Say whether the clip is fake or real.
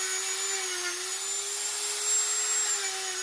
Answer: real